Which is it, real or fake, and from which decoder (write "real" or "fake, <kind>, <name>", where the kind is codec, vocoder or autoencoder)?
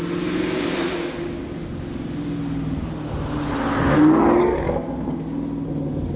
real